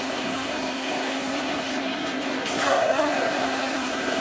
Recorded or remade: remade